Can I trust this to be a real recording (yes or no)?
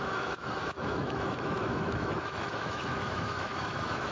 no